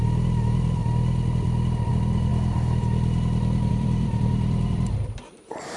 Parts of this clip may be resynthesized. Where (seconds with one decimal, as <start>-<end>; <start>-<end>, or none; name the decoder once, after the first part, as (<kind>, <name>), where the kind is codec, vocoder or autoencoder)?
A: 0.0-0.8 (vocoder, BigVGAN v2); 1.9-2.3; 3.7-5.8